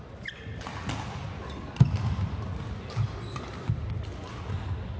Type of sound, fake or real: real